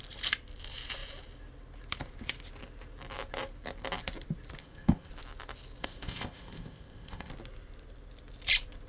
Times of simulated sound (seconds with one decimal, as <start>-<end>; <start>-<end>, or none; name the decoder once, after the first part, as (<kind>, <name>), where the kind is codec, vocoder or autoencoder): 4.6-5.1 (codec, ZipCodec); 5.8-7.3